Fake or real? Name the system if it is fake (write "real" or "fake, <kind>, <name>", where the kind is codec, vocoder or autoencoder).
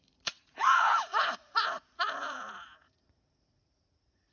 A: fake, vocoder, Vocos